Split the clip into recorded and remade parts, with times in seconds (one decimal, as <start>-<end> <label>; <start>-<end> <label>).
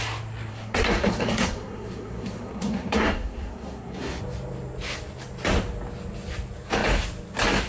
0.0-0.5 recorded; 0.5-4.2 remade; 4.2-7.7 recorded